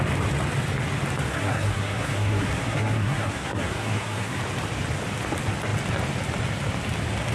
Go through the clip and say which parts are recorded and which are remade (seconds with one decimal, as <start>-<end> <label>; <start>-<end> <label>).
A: 0.0-1.3 recorded; 1.3-4.4 remade; 4.4-7.3 recorded